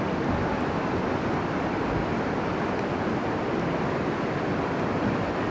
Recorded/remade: recorded